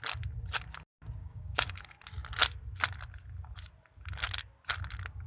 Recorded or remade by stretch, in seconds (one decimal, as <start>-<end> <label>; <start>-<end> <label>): 0.0-1.2 recorded; 1.2-1.8 remade; 1.8-5.3 recorded